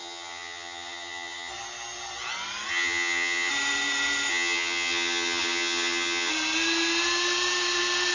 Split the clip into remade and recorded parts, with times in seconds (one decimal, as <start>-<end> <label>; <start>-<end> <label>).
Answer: 0.0-1.5 remade; 1.5-2.7 recorded; 2.7-3.5 remade; 3.5-4.3 recorded; 4.3-6.3 remade; 6.3-8.1 recorded